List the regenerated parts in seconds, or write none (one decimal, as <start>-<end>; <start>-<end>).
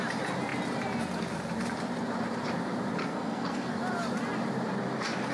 3.0-3.8